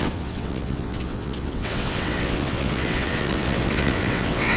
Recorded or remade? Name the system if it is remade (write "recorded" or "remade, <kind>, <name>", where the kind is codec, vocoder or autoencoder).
remade, vocoder, WaveNeXt